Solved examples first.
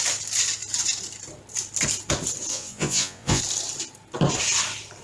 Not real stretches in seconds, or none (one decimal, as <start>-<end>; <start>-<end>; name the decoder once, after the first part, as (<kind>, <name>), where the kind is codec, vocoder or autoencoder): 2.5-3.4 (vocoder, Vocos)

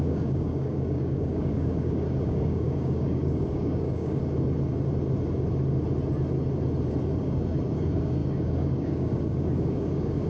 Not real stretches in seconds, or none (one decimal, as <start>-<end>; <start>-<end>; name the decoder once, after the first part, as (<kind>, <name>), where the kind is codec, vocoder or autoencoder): 0.0-4.2 (codec, DAC); 7.2-10.3

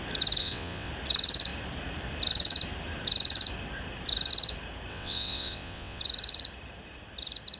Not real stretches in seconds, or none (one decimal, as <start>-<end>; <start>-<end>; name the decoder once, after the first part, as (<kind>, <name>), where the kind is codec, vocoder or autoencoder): 0.4-0.9 (vocoder, WaveNeXt); 4.9-6.0

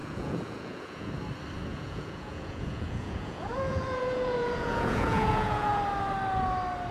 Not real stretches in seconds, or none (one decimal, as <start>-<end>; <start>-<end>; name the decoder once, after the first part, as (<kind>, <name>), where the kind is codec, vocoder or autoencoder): 0.0-1.1 (vocoder, Vocos); 1.7-5.8

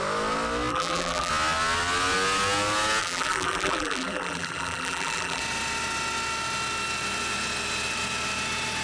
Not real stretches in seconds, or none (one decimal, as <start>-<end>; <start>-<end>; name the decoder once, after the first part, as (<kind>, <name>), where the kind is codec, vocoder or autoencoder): 0.7-1.3 (vocoder, BigVGAN v2); 3.0-5.4

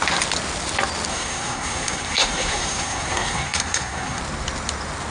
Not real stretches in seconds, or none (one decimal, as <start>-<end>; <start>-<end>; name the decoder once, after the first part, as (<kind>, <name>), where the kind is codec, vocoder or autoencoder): 1.1-4.2 (codec, SNAC)

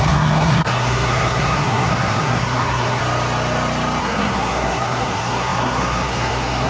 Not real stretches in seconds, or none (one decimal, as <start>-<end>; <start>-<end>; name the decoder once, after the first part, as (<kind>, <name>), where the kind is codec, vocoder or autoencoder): 0.0-3.0 (codec, SNAC); 4.0-6.7